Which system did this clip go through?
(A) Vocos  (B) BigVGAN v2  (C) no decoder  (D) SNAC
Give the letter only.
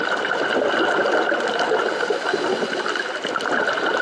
C